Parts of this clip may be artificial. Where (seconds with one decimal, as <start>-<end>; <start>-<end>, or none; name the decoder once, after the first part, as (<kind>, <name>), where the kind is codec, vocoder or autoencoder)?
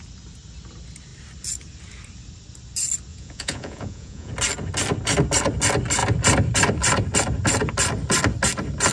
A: 3.1-4.3 (vocoder, Vocos)